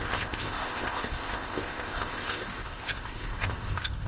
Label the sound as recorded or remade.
remade